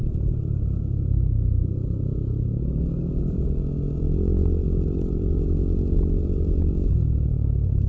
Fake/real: real